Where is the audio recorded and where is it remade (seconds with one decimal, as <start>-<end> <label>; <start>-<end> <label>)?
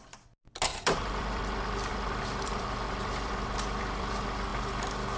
0.0-0.7 recorded; 0.7-1.4 remade; 1.4-1.9 recorded; 1.9-4.1 remade; 4.1-5.2 recorded